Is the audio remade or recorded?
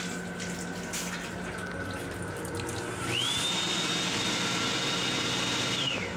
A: recorded